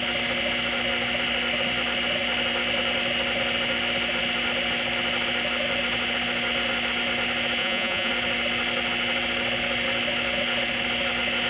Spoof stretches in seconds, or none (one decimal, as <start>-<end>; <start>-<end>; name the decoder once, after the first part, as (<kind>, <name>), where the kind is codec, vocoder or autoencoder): 7.6-8.1 (vocoder, Vocos)